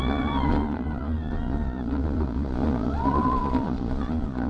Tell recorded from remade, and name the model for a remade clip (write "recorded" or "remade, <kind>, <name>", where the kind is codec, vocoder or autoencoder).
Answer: remade, vocoder, Vocos